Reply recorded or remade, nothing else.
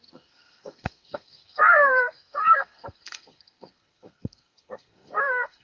remade